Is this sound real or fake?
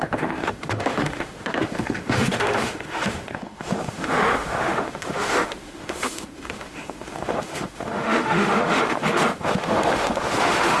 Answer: fake